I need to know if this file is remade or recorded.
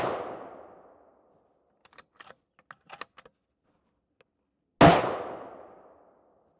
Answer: recorded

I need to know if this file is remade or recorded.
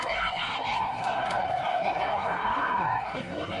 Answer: remade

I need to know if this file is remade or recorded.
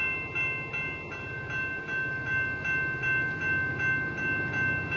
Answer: recorded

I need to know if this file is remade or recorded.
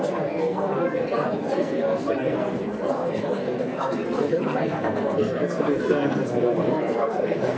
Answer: remade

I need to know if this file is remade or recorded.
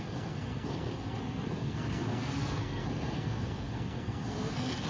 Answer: remade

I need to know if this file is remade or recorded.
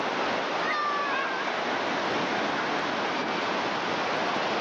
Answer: recorded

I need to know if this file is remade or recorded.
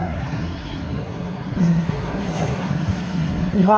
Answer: remade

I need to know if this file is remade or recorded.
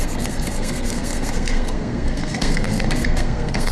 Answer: remade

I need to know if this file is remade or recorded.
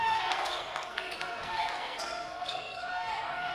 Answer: remade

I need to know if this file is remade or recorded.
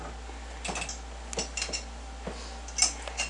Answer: recorded